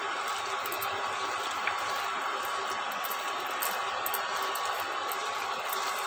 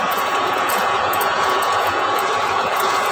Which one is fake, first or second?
second